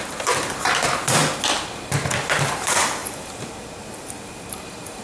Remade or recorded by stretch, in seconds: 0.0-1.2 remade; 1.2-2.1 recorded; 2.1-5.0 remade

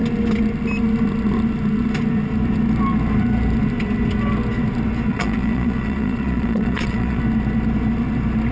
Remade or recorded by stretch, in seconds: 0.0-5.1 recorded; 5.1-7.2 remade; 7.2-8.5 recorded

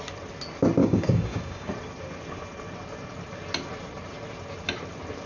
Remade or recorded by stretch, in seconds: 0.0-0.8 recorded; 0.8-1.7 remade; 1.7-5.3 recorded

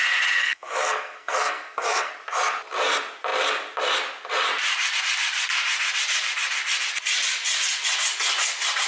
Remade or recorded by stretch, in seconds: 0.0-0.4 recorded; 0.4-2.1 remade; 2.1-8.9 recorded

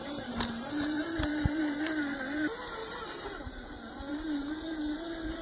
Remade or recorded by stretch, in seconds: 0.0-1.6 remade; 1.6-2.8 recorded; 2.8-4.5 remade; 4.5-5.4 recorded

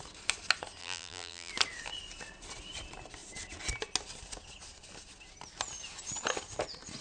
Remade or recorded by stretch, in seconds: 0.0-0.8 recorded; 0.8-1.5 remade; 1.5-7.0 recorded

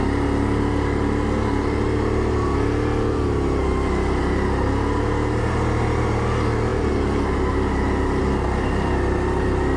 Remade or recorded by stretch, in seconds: 0.0-9.8 recorded

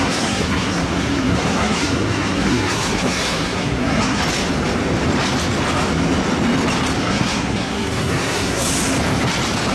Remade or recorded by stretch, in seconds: 0.0-4.2 remade; 4.2-7.0 recorded; 7.0-8.7 remade; 8.7-9.7 recorded